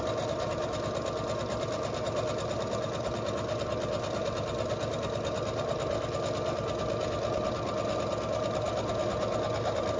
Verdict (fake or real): real